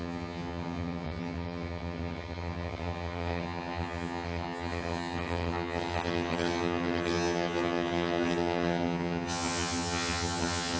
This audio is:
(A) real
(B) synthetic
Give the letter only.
B